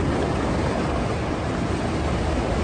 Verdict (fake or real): real